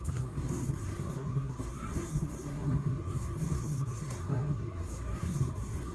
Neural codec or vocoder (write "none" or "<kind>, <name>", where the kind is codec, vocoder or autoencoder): codec, SNAC